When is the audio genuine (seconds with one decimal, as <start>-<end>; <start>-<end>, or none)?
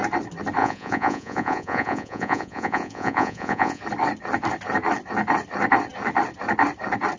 0.0-0.6; 3.8-7.2